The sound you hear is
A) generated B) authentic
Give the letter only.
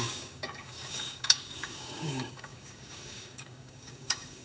A